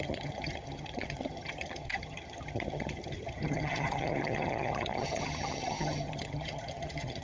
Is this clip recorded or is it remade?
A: remade